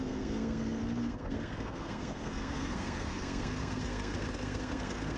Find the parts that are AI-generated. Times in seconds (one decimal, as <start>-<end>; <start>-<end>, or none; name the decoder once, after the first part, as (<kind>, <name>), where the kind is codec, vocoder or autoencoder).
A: 0.0-5.2 (codec, SNAC)